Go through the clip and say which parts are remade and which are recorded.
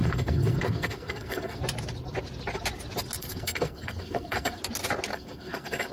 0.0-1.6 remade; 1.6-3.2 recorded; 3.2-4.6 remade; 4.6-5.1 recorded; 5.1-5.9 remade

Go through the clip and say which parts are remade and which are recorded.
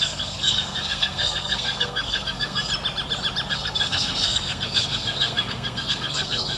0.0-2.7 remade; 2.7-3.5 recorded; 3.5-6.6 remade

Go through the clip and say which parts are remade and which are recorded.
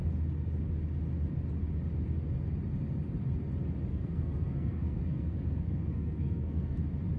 0.0-3.9 recorded; 3.9-6.8 remade; 6.8-7.2 recorded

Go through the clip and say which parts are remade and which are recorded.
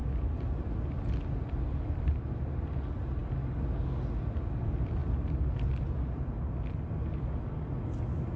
0.0-8.4 recorded